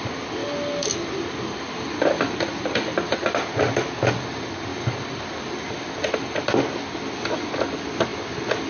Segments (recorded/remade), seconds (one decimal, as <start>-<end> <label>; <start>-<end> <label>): 0.0-0.4 recorded; 0.4-3.3 remade; 3.3-4.7 recorded; 4.7-6.5 remade; 6.5-8.7 recorded